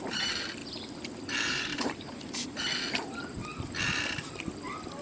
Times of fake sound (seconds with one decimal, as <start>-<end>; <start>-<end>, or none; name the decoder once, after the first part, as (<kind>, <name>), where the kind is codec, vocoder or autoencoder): 0.0-0.6 (vocoder, BigVGAN v2); 1.2-1.7; 2.9-3.4